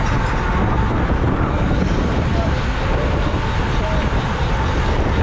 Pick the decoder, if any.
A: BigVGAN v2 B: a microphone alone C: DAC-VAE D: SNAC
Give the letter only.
B